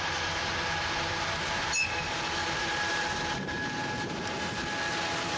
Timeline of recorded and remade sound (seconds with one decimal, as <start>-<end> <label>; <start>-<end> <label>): 0.0-2.4 recorded; 2.4-4.4 remade; 4.4-5.4 recorded